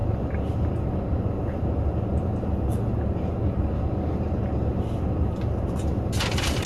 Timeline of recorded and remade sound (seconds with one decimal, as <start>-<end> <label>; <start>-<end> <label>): 0.0-0.7 remade; 0.7-6.7 recorded